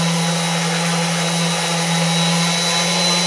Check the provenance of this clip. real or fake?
real